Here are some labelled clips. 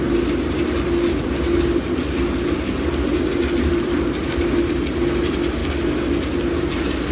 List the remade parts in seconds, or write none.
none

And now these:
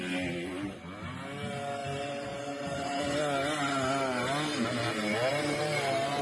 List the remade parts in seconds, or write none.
1.8-3.0 (vocoder, BigVGAN v2); 5.3-6.2

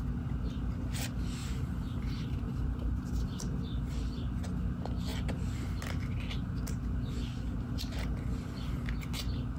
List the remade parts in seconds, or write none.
1.4-3.4 (vocoder, BigVGAN v2)

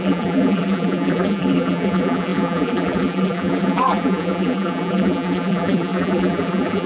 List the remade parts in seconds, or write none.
0.0-6.9 (vocoder, BigVGAN v2)

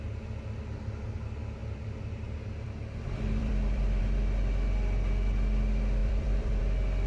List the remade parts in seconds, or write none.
1.6-4.0 (vocoder, BigVGAN v2); 6.0-6.6

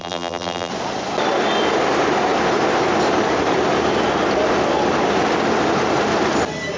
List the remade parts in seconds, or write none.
0.0-0.7 (vocoder, BigVGAN v2)

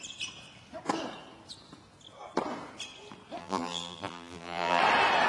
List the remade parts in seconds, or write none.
3.4-4.8 (vocoder, BigVGAN v2)